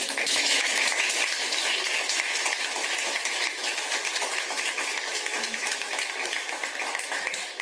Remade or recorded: remade